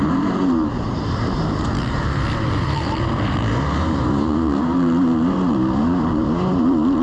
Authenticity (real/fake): fake